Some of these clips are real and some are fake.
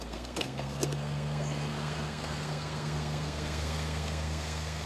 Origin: fake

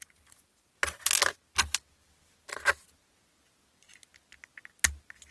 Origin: real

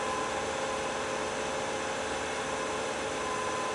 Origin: real